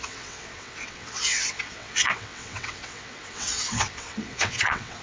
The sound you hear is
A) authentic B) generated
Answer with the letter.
B